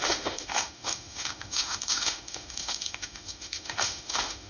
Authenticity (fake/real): fake